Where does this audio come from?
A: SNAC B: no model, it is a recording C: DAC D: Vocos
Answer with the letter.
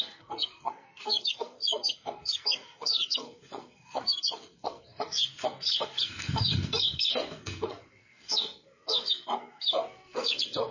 A